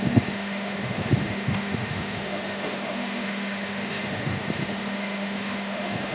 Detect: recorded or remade remade